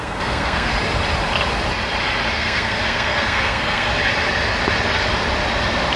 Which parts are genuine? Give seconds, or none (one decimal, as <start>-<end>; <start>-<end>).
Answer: 0.7-2.3; 3.9-6.0